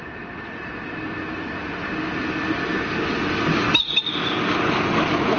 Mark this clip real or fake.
real